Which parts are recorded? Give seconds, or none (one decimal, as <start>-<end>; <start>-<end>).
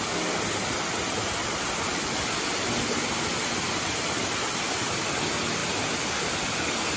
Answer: 0.0-7.0